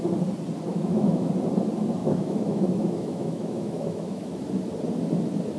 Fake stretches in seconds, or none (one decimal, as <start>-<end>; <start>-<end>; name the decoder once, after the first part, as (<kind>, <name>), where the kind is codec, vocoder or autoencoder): 0.7-1.3 (autoencoder, DAC-VAE); 2.0-4.3